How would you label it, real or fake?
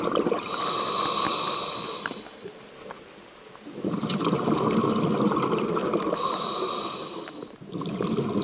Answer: real